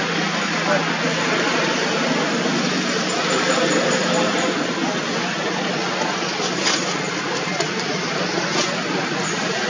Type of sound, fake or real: real